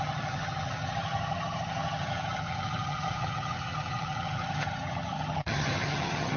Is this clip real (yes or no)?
no